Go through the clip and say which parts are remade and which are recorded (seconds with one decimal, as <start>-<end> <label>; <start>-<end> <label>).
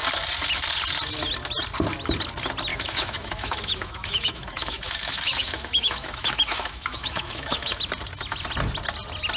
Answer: 0.0-2.7 recorded; 2.7-7.8 remade; 7.8-9.4 recorded